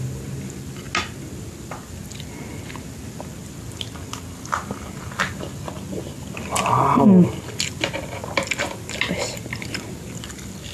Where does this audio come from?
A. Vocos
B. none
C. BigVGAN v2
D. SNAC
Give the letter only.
B